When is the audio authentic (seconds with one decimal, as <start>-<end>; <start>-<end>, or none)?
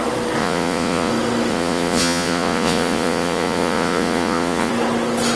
0.0-0.4; 1.1-1.5; 4.7-5.4